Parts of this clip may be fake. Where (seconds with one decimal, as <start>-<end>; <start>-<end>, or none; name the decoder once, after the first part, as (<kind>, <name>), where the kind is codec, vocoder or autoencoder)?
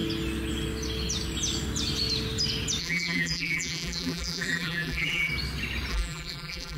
2.8-5.3 (vocoder, BigVGAN v2); 5.9-6.8